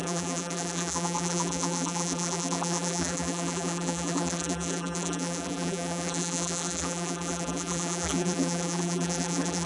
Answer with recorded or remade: remade